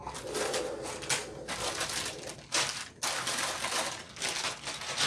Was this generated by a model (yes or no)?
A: no